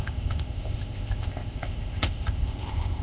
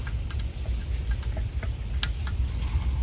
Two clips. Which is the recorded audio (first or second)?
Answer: second